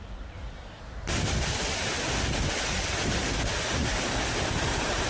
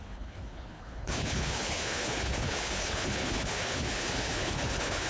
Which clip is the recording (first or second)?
first